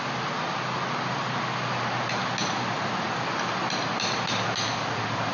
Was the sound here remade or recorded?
recorded